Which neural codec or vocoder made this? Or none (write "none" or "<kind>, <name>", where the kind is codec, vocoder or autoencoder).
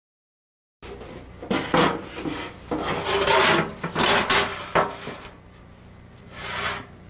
none